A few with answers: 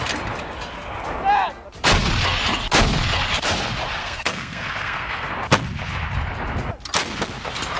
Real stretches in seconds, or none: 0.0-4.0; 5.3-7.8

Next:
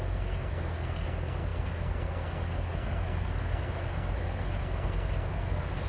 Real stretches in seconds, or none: none

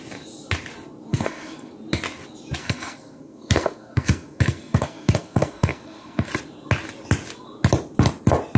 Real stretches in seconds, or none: 0.0-1.1; 1.7-2.6; 6.3-8.6

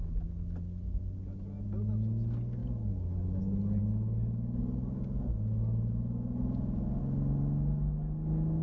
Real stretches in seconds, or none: 0.0-8.6

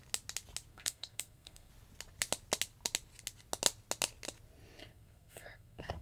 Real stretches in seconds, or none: 0.0-0.7; 1.7-4.9